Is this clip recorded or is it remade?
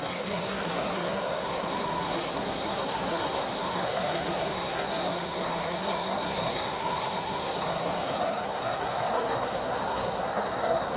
remade